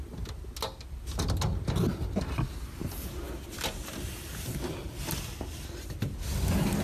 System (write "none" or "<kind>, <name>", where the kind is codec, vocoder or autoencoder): none